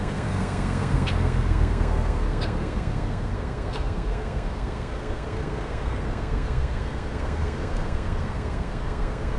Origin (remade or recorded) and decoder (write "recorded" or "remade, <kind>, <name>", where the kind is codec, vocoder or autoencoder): remade, codec, SNAC